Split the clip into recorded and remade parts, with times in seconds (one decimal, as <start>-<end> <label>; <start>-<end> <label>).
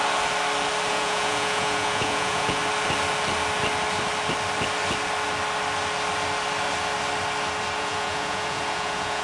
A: 0.0-0.9 recorded; 0.9-2.6 remade; 2.6-7.8 recorded; 7.8-9.2 remade